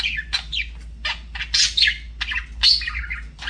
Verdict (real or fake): real